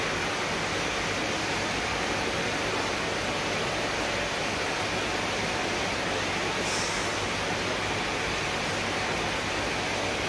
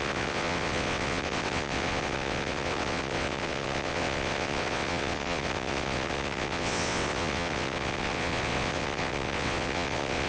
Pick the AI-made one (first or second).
second